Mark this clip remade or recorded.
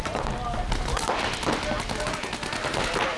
recorded